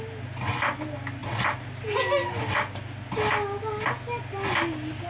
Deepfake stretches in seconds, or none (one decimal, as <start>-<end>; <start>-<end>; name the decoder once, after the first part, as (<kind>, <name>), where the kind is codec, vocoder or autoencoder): none